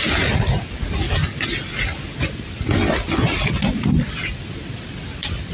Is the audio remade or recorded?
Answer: recorded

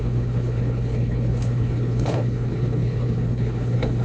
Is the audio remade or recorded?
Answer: remade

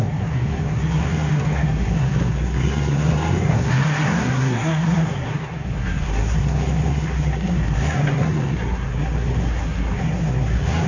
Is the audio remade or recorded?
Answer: remade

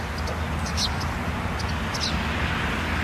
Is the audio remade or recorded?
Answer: recorded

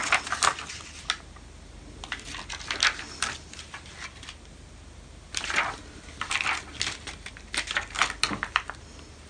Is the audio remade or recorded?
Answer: recorded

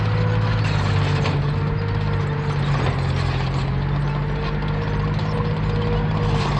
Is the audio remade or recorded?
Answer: recorded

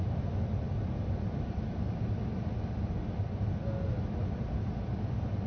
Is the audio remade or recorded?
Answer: recorded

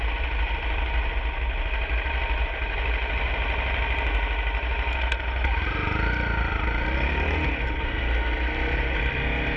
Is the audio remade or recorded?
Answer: recorded